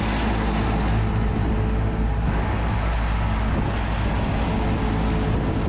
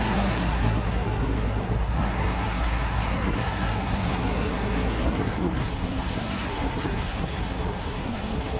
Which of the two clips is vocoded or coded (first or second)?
second